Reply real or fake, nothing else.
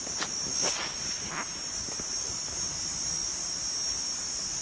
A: real